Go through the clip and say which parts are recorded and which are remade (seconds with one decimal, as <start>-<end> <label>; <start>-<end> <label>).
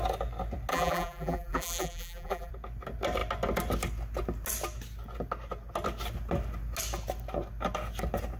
0.0-0.7 recorded; 0.7-2.5 remade; 2.5-8.4 recorded